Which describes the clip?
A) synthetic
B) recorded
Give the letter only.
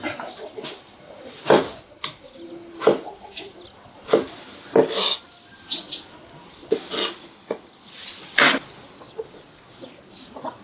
B